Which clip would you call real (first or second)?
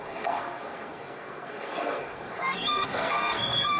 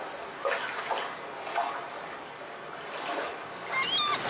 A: second